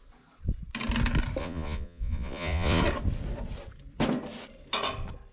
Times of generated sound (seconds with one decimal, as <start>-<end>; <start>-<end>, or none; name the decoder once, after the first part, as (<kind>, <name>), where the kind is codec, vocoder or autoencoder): 1.4-2.8 (vocoder, Vocos)